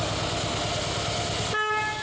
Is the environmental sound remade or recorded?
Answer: recorded